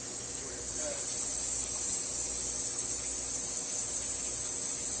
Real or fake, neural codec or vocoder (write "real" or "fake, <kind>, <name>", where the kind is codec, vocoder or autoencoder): real